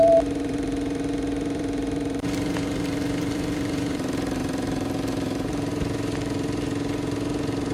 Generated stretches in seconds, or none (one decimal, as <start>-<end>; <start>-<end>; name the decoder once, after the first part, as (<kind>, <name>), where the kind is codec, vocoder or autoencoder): 0.0-7.7 (vocoder, BigVGAN v2)